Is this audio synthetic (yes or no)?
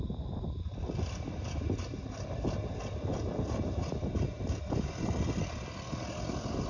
no